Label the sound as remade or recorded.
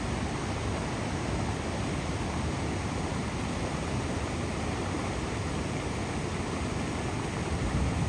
recorded